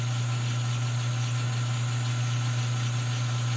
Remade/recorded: recorded